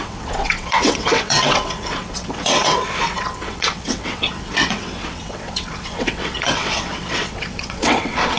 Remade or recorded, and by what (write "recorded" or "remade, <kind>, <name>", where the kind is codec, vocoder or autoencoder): remade, vocoder, WaveNeXt